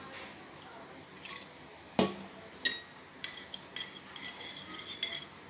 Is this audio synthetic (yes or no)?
no